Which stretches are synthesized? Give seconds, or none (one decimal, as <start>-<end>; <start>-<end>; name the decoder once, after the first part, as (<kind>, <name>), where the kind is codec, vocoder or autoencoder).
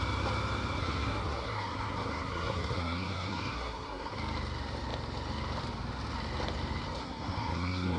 0.8-4.1 (codec, SNAC); 7.0-8.0